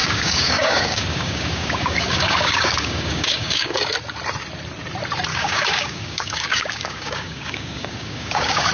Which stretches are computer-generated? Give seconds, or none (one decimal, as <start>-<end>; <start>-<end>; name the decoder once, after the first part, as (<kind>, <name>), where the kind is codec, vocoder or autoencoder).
0.0-3.8 (codec, DAC); 5.3-8.7